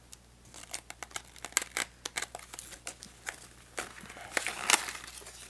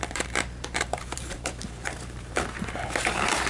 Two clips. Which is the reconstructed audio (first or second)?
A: second